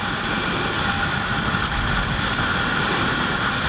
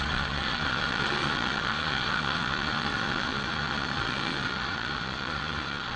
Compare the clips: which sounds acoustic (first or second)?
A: first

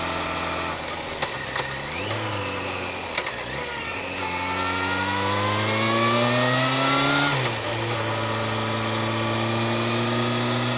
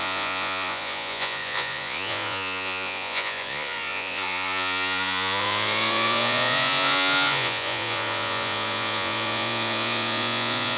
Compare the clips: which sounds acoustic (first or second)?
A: first